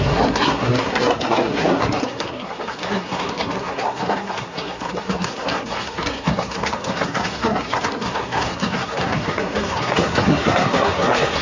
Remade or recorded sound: remade